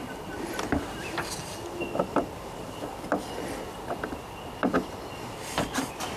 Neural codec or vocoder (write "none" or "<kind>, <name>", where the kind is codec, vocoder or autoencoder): none